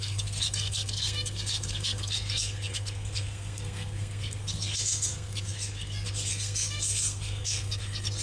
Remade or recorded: remade